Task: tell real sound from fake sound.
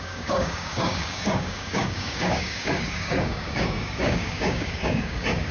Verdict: fake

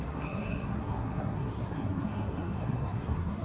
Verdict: fake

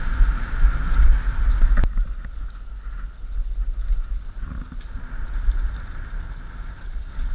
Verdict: real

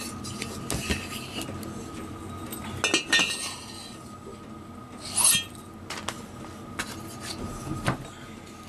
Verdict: real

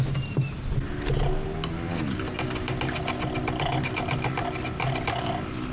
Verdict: real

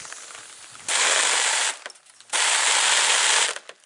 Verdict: real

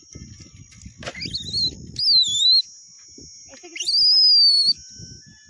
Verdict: real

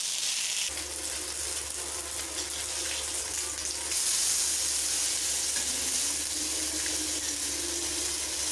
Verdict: real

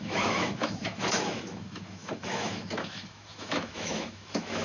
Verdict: fake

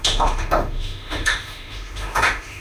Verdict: fake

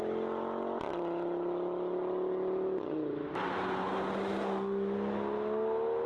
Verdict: real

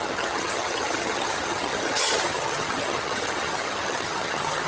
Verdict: fake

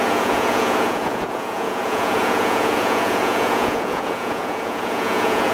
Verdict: fake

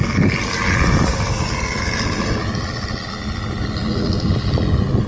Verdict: real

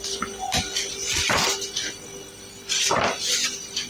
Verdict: real